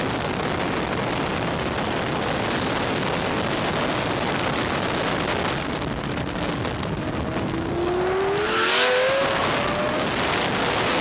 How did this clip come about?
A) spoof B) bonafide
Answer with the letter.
B